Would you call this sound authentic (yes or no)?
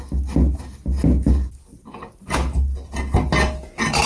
yes